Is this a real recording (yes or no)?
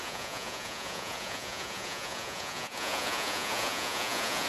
no